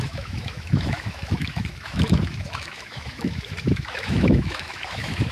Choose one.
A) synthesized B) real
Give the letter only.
A